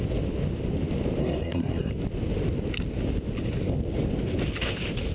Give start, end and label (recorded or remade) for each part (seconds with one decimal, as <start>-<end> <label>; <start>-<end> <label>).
0.0-1.2 recorded; 1.2-1.9 remade; 1.9-5.1 recorded

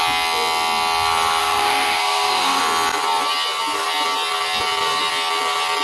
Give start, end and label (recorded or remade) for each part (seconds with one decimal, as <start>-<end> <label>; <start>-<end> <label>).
0.0-1.4 recorded; 1.4-2.6 remade; 2.6-5.8 recorded